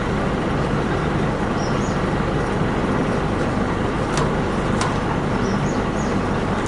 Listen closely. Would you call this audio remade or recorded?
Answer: recorded